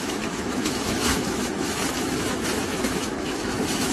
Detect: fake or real fake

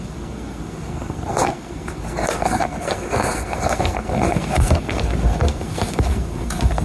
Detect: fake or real fake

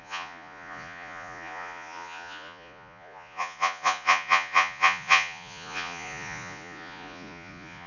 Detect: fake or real fake